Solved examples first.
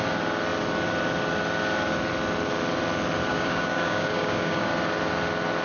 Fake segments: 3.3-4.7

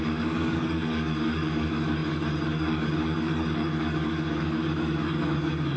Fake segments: 0.0-5.8